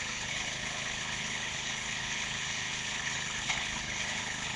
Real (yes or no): no